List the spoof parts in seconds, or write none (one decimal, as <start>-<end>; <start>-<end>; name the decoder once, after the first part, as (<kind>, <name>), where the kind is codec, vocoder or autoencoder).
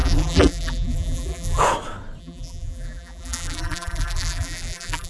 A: 0.0-1.6 (vocoder, BigVGAN v2); 2.2-5.1